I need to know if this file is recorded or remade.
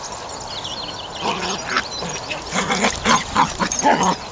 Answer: recorded